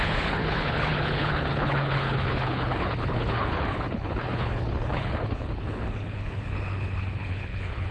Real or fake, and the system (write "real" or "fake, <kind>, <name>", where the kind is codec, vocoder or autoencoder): fake, codec, HILCodec